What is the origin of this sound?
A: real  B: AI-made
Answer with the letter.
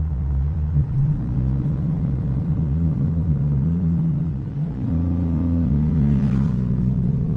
B